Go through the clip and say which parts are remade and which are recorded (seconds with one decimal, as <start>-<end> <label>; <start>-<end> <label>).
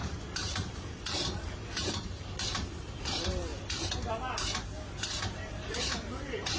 0.0-3.5 remade; 3.5-5.3 recorded; 5.3-6.6 remade